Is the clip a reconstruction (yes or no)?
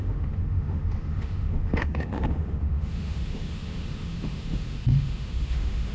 yes